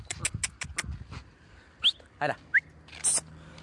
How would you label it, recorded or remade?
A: recorded